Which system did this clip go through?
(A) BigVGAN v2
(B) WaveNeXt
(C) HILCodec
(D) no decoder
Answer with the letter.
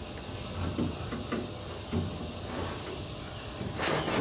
D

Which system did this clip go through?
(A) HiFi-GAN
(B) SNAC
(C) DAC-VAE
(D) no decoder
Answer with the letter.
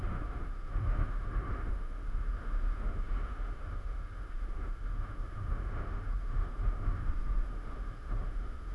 C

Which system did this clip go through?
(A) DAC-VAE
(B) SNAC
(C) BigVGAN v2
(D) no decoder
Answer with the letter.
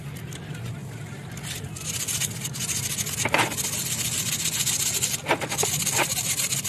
D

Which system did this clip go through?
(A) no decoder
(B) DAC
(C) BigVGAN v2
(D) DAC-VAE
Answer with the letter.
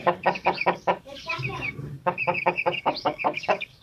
B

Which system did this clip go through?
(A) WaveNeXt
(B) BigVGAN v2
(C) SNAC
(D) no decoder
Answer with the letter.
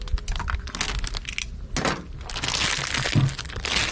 D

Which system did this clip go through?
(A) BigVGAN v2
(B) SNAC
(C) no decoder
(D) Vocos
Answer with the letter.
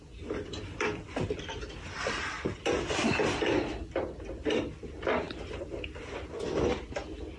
A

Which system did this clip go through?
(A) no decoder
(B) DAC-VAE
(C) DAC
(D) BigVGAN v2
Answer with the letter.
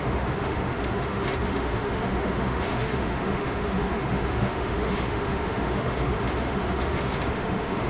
B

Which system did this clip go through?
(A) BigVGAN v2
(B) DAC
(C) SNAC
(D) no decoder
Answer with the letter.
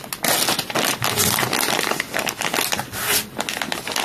D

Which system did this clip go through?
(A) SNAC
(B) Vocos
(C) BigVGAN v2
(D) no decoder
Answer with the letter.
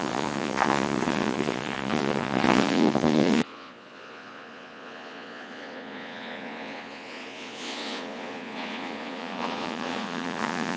B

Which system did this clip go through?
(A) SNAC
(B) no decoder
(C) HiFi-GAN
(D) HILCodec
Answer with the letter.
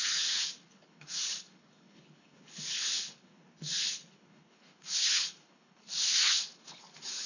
D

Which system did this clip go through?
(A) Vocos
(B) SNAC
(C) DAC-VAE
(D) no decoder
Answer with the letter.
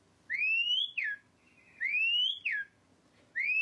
D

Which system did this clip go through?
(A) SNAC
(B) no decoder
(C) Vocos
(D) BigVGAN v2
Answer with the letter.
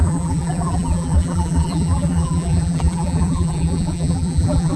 D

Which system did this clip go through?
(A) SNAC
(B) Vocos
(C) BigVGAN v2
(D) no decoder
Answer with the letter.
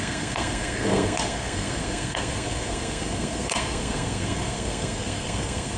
A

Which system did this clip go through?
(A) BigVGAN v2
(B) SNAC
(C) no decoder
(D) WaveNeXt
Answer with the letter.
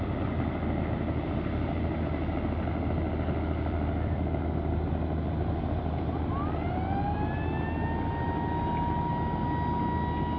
C